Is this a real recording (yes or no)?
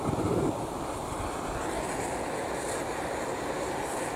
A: yes